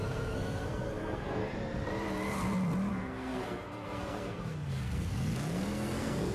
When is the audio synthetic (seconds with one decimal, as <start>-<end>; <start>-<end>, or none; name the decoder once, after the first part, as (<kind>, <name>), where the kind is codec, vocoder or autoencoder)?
0.0-1.4 (codec, SNAC); 2.9-6.3